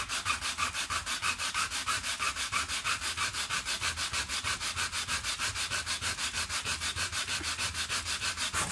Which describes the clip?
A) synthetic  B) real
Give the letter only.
B